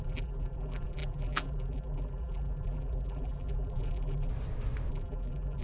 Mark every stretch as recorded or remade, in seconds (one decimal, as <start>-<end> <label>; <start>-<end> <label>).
0.0-4.3 remade; 4.3-4.9 recorded; 4.9-5.6 remade

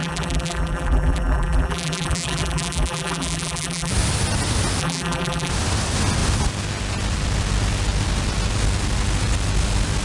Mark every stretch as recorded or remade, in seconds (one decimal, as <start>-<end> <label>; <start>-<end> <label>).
0.0-3.9 remade; 3.9-4.8 recorded; 4.8-5.5 remade; 5.5-10.0 recorded

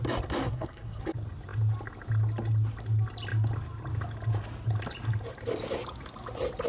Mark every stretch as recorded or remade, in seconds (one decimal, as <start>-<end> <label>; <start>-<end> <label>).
0.0-0.4 recorded; 0.4-1.0 remade; 1.0-6.7 recorded